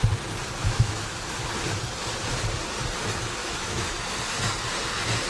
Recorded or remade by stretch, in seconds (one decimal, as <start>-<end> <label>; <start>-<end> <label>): 0.0-0.6 recorded; 0.6-1.2 remade; 1.2-3.4 recorded; 3.4-4.1 remade; 4.1-5.3 recorded